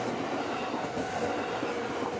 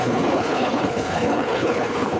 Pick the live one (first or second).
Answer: first